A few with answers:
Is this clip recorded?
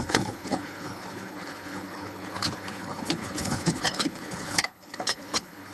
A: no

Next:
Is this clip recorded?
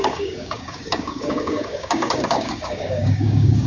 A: no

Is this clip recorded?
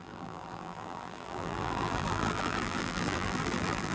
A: no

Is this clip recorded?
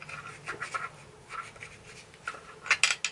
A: yes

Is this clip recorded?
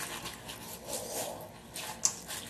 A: yes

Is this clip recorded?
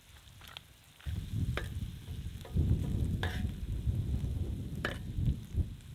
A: yes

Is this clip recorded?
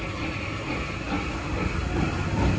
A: yes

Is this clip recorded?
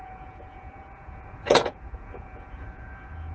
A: no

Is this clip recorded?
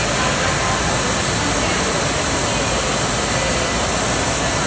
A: yes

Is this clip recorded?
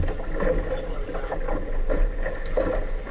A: yes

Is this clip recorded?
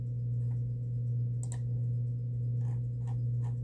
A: yes